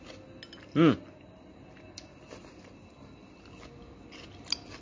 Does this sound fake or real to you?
real